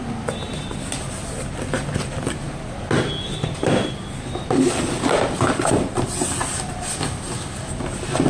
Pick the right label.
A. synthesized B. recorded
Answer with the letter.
B